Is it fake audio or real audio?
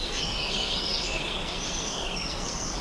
fake